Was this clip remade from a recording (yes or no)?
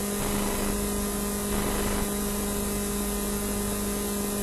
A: no